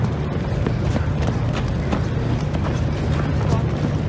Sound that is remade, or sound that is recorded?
recorded